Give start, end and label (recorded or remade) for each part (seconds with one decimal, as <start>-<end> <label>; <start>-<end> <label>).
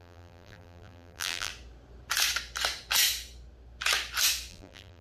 0.0-1.5 remade; 1.5-4.5 recorded; 4.5-5.0 remade